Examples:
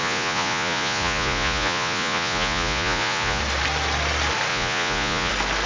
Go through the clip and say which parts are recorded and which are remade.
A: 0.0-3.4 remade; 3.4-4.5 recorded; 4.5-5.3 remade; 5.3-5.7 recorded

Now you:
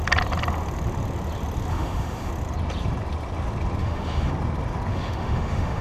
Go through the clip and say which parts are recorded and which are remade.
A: 0.0-1.7 recorded; 1.7-2.3 remade; 2.3-3.8 recorded; 3.8-4.3 remade; 4.3-4.9 recorded; 4.9-5.8 remade

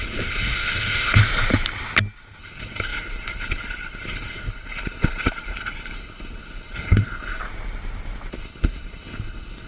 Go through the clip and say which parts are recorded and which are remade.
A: 0.0-1.2 remade; 1.2-2.4 recorded; 2.4-7.4 remade; 7.4-8.3 recorded; 8.3-9.7 remade

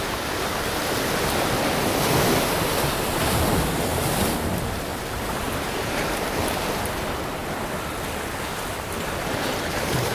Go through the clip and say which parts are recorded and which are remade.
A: 0.0-4.9 recorded; 4.9-6.5 remade; 6.5-10.1 recorded

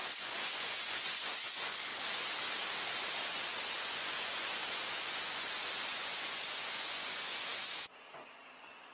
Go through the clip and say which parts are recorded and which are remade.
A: 0.0-1.9 remade; 1.9-3.3 recorded; 3.3-8.9 remade

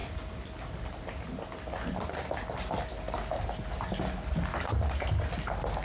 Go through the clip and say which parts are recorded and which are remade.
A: 0.0-5.8 remade

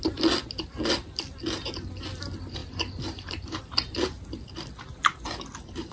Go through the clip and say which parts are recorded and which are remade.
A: 0.0-2.6 recorded; 2.6-3.6 remade; 3.6-5.9 recorded